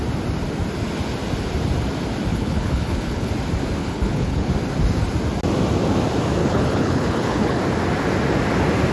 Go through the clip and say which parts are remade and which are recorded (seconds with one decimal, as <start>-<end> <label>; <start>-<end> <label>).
0.0-2.3 recorded; 2.3-3.3 remade; 3.3-3.8 recorded; 3.8-4.5 remade; 4.5-6.4 recorded; 6.4-7.6 remade; 7.6-8.9 recorded